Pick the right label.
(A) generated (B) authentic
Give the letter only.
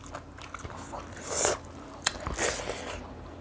B